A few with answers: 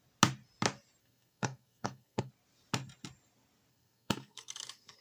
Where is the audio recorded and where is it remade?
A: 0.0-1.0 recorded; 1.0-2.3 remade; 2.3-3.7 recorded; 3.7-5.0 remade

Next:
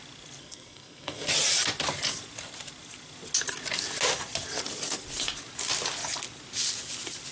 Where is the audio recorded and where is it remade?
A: 0.0-0.4 recorded; 0.4-1.3 remade; 1.3-7.3 recorded

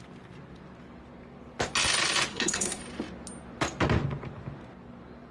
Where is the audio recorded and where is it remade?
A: 0.0-2.3 recorded; 2.3-2.8 remade; 2.8-5.3 recorded

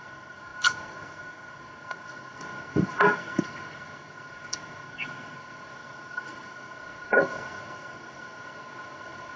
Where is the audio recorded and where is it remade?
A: 0.0-9.4 remade